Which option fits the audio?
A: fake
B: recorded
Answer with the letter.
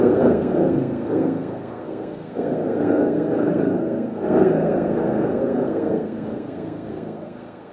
A